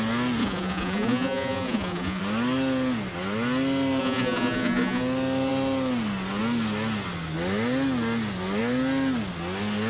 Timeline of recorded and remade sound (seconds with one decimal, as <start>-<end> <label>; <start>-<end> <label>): 0.0-0.4 recorded; 0.4-2.2 remade; 2.2-4.0 recorded; 4.0-5.0 remade; 5.0-9.9 recorded